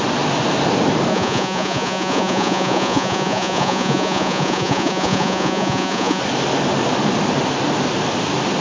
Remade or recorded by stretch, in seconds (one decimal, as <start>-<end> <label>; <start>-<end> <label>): 0.0-1.1 recorded; 1.1-6.2 remade; 6.2-8.6 recorded